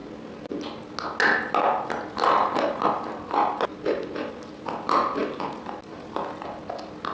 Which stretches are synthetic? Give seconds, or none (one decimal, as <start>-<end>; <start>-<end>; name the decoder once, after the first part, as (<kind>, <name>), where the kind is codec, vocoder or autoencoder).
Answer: none